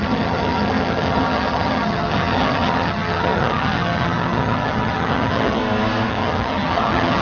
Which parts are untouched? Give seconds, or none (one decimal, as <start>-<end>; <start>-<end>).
5.6-6.1